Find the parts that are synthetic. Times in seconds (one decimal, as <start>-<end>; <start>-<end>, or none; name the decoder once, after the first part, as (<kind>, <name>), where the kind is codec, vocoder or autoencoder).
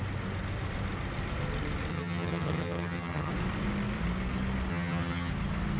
1.9-3.3 (vocoder, HiFi-GAN); 4.7-5.3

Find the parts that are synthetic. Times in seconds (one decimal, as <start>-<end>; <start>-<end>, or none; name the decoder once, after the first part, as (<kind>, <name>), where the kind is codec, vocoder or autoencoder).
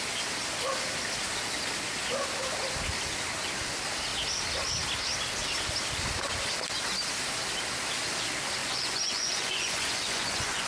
8.6-10.7 (vocoder, Vocos)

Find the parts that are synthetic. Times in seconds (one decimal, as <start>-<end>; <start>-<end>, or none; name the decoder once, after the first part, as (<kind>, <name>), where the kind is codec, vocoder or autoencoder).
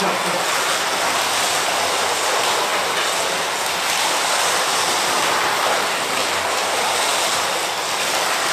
none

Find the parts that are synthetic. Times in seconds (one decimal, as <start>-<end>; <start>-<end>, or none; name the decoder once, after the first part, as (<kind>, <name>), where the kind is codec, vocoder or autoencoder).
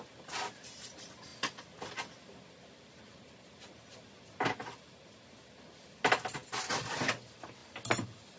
none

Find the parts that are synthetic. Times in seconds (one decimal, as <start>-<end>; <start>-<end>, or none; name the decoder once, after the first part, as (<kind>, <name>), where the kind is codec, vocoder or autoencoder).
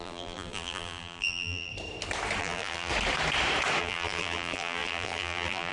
0.0-1.7 (vocoder, BigVGAN v2); 2.4-2.9; 3.8-5.7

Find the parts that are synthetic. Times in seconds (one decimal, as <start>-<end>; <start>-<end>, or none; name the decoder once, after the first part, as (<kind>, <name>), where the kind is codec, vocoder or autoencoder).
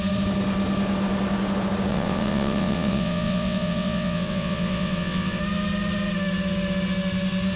1.9-5.4 (vocoder, WaveNeXt)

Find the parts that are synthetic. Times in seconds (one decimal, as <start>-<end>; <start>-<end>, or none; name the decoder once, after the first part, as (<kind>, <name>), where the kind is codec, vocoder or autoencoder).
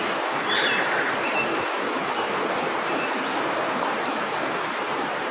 none